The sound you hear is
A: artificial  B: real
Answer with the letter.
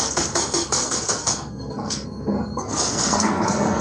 A